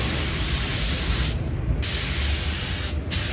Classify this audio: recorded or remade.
recorded